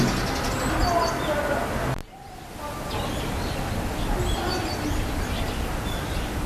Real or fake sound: real